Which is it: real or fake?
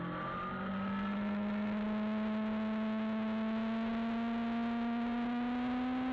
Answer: real